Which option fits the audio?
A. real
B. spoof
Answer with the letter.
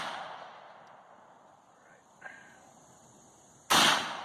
A